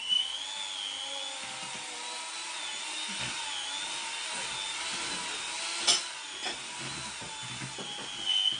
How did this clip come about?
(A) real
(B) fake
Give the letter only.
A